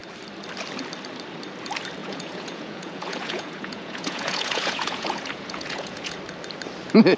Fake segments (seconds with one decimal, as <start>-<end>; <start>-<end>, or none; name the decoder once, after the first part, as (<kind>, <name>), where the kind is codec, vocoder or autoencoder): 2.0-6.2 (vocoder, Vocos)